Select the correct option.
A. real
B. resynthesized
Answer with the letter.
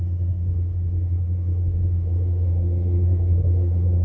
B